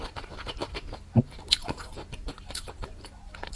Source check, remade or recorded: recorded